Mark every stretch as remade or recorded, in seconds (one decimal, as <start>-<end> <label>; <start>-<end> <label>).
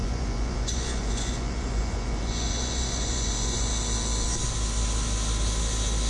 0.0-3.7 remade; 3.7-6.1 recorded